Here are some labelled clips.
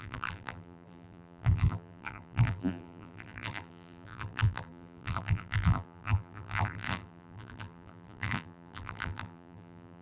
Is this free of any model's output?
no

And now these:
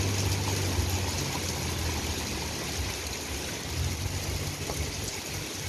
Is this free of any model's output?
yes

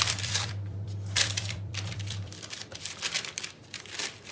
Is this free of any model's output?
no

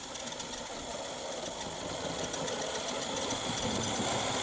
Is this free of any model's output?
yes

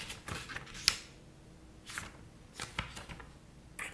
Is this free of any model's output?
yes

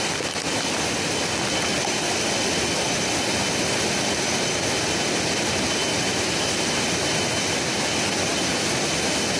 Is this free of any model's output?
yes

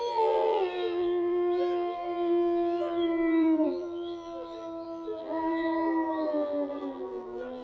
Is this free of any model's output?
no